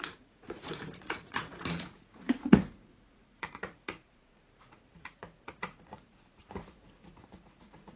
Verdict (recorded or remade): remade